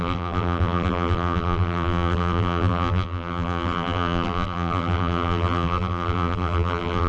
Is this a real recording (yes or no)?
no